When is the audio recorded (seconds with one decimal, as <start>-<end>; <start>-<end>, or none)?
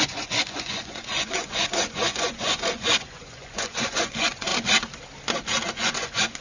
4.5-5.7